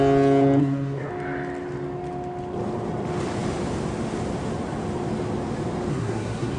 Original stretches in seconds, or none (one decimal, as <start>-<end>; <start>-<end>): 0.0-0.6; 1.1-5.9